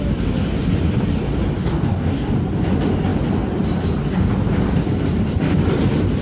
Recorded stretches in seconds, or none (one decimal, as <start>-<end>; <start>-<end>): 0.0-1.6; 2.3-6.2